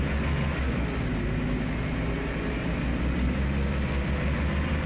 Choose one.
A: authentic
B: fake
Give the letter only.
A